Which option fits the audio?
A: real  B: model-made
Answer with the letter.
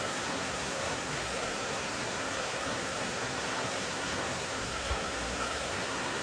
B